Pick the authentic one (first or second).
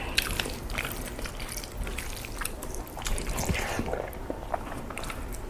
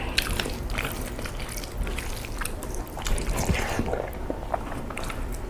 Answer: second